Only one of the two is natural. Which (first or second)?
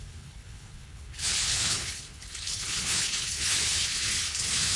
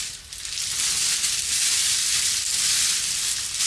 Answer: second